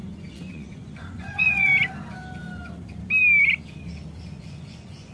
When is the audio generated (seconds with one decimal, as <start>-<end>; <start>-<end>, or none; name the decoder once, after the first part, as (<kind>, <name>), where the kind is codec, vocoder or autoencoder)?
0.0-1.7 (vocoder, Vocos); 4.5-5.1